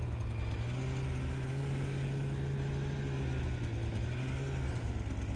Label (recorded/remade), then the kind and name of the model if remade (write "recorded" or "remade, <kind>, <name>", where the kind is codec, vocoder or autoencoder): recorded